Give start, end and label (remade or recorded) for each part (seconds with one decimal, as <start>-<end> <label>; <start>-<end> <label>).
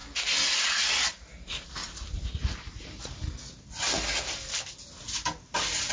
0.0-5.9 recorded